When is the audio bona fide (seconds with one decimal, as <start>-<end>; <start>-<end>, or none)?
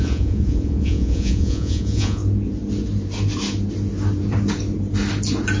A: 2.2-5.6